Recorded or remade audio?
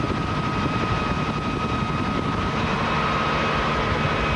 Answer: recorded